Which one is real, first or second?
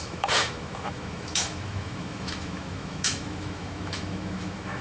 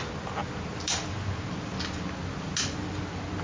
second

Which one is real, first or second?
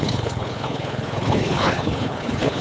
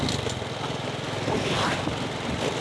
second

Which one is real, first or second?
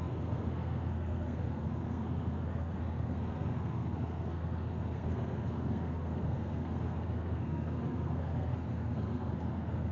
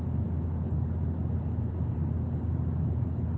second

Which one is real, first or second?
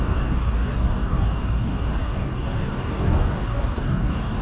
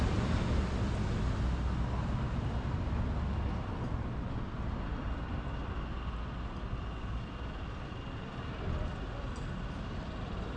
second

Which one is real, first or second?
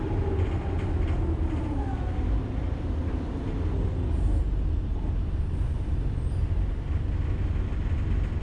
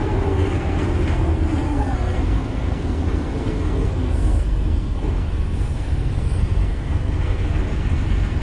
first